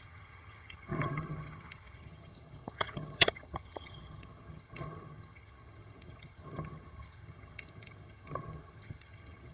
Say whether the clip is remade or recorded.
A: remade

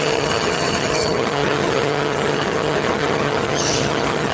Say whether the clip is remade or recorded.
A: remade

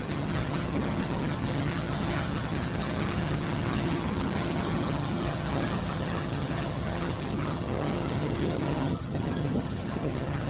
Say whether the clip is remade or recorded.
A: remade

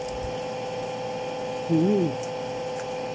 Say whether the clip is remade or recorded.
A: recorded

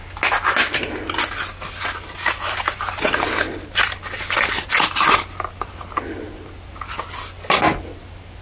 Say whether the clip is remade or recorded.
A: recorded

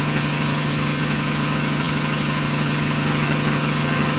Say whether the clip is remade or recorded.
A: remade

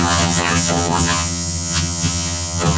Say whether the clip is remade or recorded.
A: remade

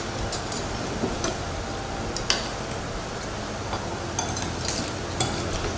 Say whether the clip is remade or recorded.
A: recorded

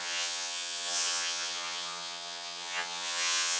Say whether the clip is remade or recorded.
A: remade